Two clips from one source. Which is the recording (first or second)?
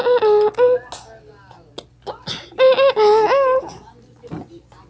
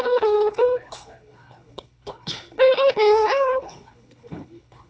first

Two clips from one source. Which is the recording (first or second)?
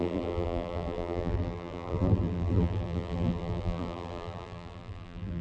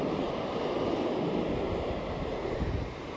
second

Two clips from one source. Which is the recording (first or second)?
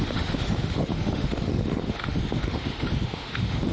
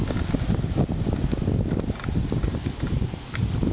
second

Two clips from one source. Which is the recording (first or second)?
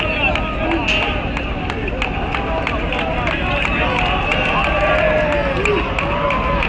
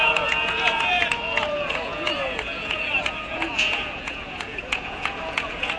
first